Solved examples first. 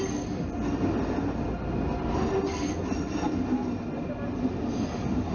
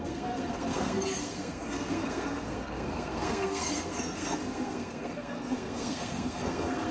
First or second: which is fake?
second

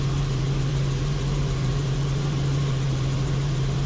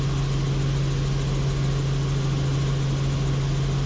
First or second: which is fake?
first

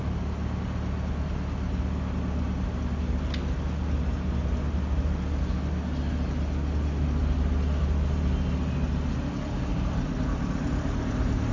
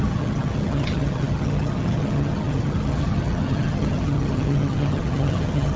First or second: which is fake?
second